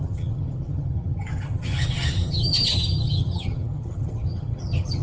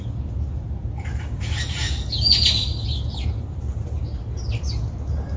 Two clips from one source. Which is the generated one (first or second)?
first